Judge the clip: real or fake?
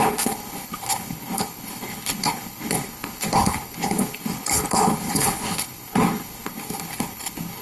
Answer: fake